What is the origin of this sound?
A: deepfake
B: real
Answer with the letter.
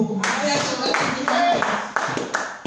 A